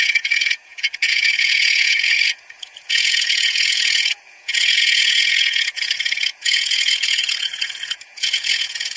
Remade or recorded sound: remade